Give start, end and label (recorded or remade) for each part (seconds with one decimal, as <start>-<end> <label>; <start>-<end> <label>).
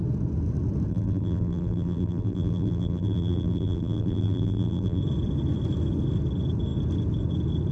0.0-0.9 recorded; 0.9-5.0 remade; 5.0-7.7 recorded